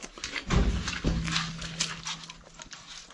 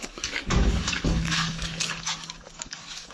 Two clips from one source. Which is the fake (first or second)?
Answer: second